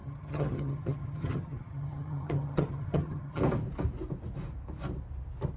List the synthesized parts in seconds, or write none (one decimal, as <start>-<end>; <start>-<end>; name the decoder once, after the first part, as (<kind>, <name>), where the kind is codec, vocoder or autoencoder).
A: 0.0-3.4 (vocoder, HiFi-GAN)